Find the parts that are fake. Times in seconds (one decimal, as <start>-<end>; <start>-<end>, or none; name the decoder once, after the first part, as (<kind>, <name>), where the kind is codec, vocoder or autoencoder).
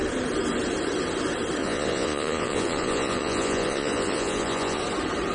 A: 1.6-4.8 (vocoder, Vocos)